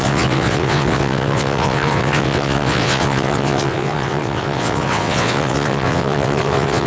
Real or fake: fake